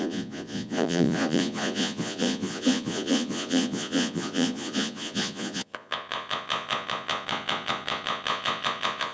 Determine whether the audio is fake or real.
fake